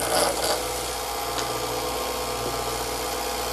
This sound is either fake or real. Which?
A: real